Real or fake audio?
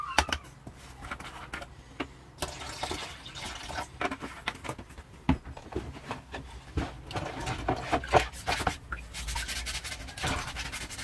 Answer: real